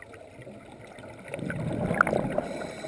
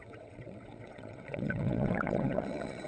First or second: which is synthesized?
second